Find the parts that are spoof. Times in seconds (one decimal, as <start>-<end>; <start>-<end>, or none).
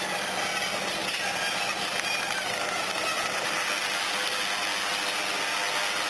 1.0-3.7